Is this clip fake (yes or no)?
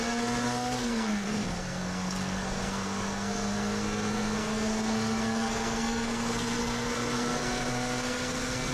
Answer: yes